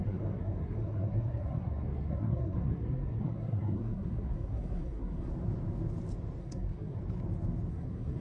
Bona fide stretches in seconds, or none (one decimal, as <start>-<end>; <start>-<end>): 5.3-6.4; 7.0-7.7